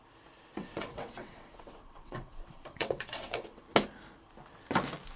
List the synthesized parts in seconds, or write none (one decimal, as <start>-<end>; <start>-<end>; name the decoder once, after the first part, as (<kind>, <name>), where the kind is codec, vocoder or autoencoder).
0.6-3.6 (vocoder, WaveNeXt)